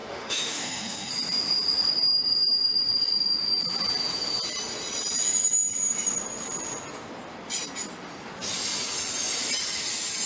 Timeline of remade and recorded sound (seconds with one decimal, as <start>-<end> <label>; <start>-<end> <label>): 0.0-1.1 remade; 1.1-10.3 recorded